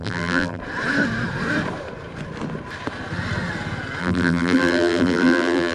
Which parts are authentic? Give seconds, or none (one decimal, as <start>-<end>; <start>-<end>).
0.6-4.0